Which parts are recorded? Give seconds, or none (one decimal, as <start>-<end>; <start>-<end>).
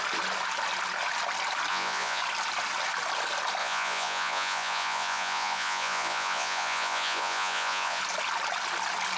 0.0-1.7; 2.2-3.6; 8.0-9.2